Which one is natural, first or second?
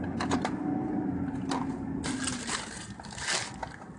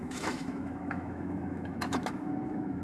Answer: first